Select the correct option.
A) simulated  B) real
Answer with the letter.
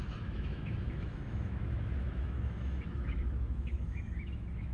A